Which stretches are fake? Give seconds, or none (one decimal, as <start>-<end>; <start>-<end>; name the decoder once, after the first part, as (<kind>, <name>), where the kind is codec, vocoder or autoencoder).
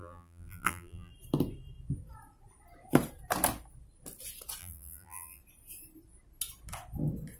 0.0-1.1 (vocoder, BigVGAN v2); 4.6-5.4